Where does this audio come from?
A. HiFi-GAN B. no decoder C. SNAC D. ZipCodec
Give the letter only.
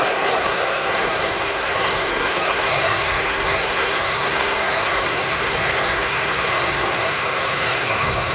C